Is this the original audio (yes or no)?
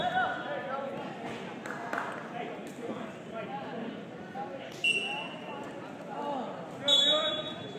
yes